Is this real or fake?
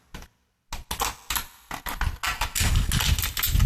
real